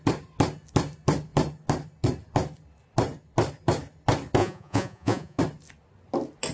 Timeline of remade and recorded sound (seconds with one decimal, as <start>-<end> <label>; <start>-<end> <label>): 0.0-4.4 recorded; 4.4-5.4 remade; 5.4-6.5 recorded